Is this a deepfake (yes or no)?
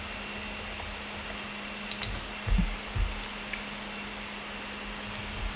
no